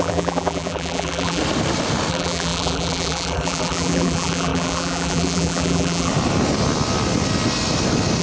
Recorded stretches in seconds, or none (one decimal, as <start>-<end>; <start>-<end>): 1.4-2.1; 6.1-8.2